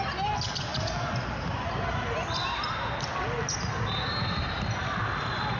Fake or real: real